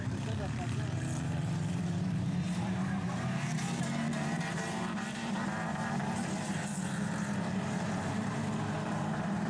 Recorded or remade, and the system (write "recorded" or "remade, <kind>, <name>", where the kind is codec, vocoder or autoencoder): remade, vocoder, BigVGAN v2